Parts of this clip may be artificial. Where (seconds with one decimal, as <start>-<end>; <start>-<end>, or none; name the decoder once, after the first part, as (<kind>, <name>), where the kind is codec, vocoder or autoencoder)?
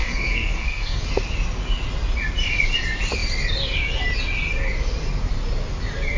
0.0-1.0 (codec, SNAC)